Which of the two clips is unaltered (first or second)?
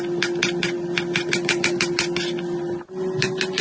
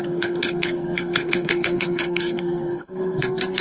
first